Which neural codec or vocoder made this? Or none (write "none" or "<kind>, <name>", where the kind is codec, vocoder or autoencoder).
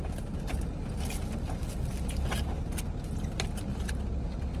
none